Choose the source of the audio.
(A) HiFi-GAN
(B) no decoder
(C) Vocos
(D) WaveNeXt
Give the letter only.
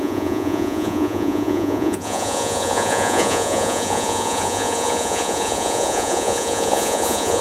C